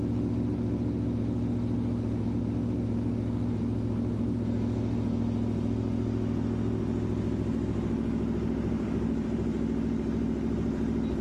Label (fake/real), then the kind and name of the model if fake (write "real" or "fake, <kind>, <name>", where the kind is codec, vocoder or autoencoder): real